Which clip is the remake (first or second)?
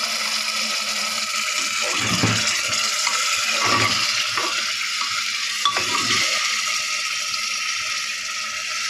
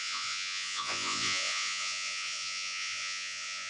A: second